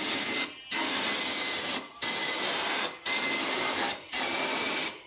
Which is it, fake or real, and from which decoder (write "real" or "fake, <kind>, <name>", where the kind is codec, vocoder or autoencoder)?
real